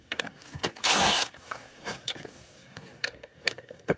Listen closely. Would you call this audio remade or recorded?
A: remade